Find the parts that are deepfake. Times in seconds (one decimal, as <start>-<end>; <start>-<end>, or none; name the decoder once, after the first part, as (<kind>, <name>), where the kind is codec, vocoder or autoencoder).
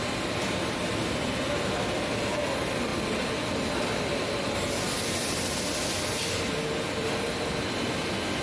0.0-8.4 (vocoder, BigVGAN v2)